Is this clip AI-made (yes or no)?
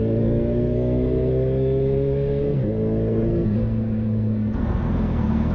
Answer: yes